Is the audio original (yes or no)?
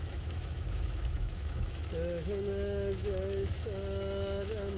no